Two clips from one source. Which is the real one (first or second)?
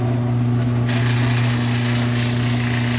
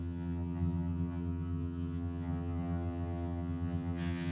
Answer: first